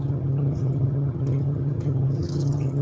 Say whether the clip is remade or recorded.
remade